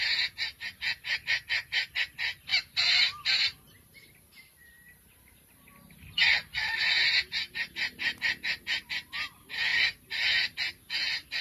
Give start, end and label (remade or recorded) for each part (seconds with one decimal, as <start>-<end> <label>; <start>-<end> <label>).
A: 0.0-2.5 recorded; 2.5-6.9 remade; 6.9-11.4 recorded

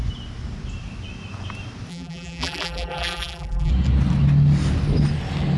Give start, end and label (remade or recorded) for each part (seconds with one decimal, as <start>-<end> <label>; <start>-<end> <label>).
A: 0.0-1.9 recorded; 1.9-3.7 remade; 3.7-5.6 recorded

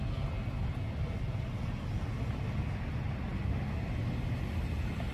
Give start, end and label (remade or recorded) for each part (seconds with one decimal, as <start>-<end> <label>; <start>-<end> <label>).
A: 0.0-5.1 recorded